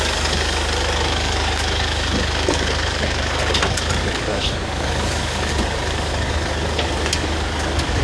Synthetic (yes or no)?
yes